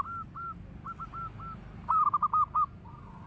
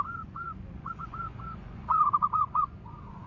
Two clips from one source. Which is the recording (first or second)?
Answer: first